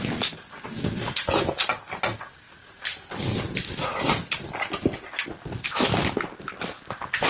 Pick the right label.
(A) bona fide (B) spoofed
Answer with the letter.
A